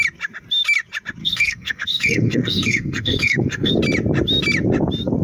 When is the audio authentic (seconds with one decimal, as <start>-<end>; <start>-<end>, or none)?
0.0-1.2; 3.7-5.2